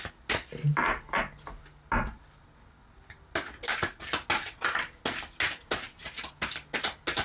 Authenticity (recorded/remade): recorded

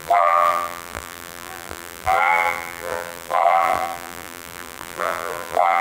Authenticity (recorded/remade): remade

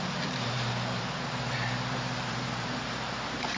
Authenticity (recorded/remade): remade